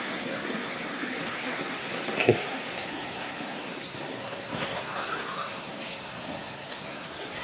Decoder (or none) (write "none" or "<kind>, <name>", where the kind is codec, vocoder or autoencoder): codec, SNAC